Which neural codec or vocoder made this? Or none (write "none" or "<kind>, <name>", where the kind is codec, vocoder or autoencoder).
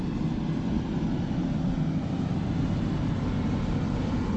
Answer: none